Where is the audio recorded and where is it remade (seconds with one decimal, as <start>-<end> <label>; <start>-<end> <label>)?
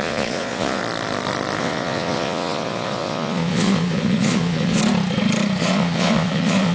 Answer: 0.0-0.8 remade; 0.8-1.6 recorded; 1.6-4.8 remade; 4.8-5.6 recorded; 5.6-6.7 remade